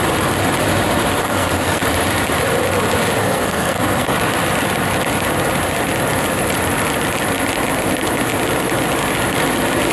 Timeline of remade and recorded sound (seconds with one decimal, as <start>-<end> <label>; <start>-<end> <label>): 0.0-1.2 recorded; 1.2-1.8 remade; 1.8-3.2 recorded; 3.2-4.1 remade; 4.1-9.9 recorded

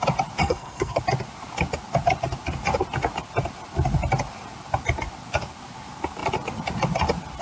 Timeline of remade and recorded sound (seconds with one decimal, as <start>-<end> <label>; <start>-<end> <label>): 0.0-0.4 recorded; 0.4-1.0 remade; 1.0-7.4 recorded

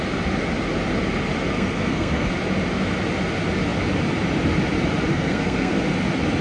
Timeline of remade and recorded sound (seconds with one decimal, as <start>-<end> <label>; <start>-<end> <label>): 0.0-1.5 recorded; 1.5-2.3 remade; 2.3-5.1 recorded; 5.1-5.8 remade; 5.8-6.4 recorded

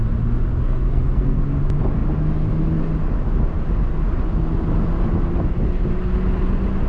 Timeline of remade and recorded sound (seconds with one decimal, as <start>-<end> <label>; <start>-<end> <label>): 0.0-0.5 recorded; 0.5-1.4 remade; 1.4-6.9 recorded

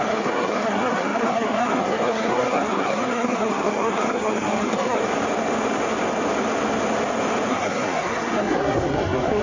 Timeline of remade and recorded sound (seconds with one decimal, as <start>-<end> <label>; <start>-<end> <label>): 0.0-5.0 remade; 5.0-7.5 recorded; 7.5-9.4 remade